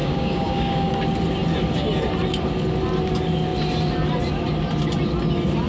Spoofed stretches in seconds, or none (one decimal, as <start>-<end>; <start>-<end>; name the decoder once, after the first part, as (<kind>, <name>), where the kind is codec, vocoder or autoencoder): 0.0-0.9 (codec, DAC)